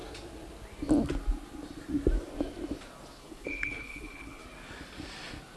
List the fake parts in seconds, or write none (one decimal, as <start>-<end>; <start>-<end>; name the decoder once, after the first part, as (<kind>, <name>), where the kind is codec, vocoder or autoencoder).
3.2-4.4 (codec, HILCodec)